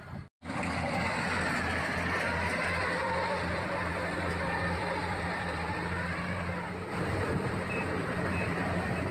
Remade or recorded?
remade